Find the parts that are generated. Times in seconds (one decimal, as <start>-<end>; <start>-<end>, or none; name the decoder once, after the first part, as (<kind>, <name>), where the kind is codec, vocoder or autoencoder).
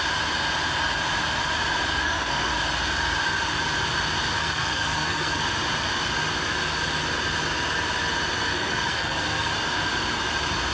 1.9-2.5 (codec, SNAC); 4.4-5.4; 8.5-9.5